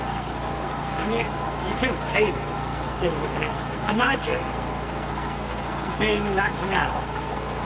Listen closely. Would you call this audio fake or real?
fake